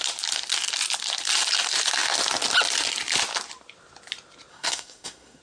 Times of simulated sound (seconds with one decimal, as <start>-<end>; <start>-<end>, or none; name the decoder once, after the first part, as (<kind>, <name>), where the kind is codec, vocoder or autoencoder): 4.5-5.4 (codec, SNAC)